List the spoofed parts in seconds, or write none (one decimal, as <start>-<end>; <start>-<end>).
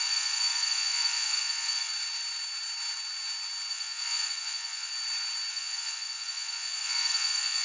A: 0.0-1.9; 3.7-4.9; 5.5-7.6